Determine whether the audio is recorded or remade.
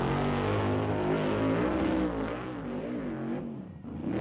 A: recorded